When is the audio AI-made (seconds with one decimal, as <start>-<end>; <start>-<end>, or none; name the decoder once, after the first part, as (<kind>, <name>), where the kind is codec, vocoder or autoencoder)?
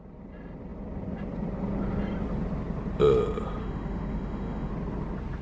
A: 3.6-4.7 (autoencoder, DAC-VAE)